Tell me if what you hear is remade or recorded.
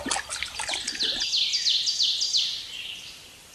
recorded